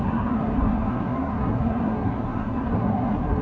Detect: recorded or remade remade